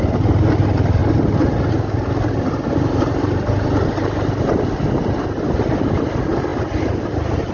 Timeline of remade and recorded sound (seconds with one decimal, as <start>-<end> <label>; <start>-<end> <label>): 0.0-7.5 recorded